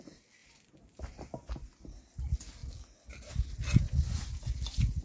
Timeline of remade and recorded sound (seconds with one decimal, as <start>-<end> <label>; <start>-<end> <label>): 0.0-0.4 recorded; 0.4-1.5 remade; 1.5-5.0 recorded

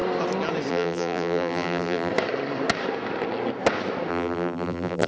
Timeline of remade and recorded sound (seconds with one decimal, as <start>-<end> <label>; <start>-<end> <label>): 0.0-0.7 recorded; 0.7-2.1 remade; 2.1-4.1 recorded; 4.1-5.1 remade

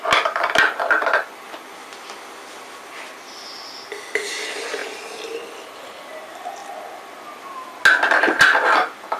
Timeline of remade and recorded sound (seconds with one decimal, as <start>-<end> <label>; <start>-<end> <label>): 0.0-9.2 recorded

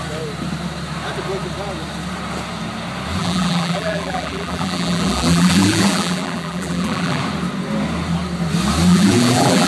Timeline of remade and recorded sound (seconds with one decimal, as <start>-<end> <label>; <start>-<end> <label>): 0.0-3.2 recorded; 3.2-7.2 remade; 7.2-8.9 recorded; 8.9-9.7 remade